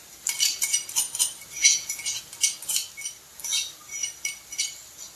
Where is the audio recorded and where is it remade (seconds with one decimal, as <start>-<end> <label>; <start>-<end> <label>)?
0.0-1.6 recorded; 1.6-2.2 remade; 2.2-5.2 recorded